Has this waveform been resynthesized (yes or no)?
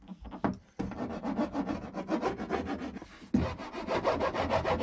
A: no